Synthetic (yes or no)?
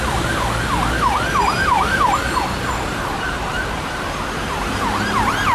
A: no